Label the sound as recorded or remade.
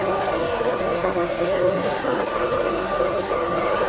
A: remade